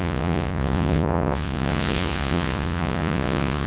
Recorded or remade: remade